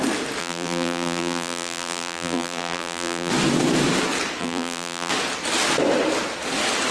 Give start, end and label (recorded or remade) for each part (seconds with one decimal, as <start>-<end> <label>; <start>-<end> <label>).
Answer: 0.0-0.4 recorded; 0.4-3.3 remade; 3.3-4.4 recorded; 4.4-5.1 remade; 5.1-6.9 recorded